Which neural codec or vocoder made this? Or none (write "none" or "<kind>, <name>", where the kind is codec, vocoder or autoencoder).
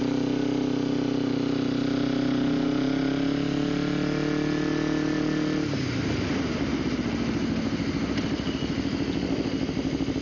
none